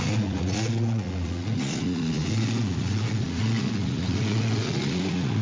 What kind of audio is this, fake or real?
fake